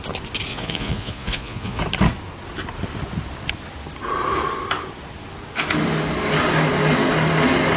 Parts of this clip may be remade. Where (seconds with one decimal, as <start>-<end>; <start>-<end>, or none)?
0.5-1.8